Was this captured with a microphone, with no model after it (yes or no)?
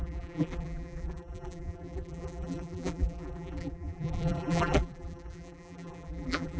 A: no